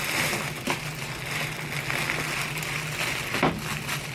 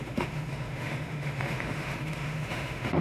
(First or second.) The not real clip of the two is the second